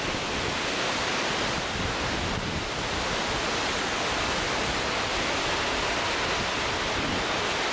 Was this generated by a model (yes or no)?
no